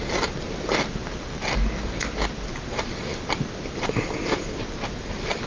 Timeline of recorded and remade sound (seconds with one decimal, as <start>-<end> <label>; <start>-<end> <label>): 0.0-5.5 recorded